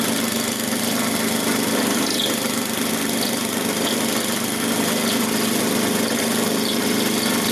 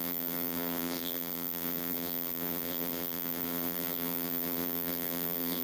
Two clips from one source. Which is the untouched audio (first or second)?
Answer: first